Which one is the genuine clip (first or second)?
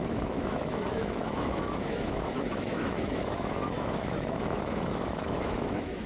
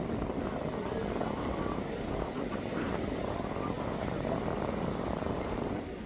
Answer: second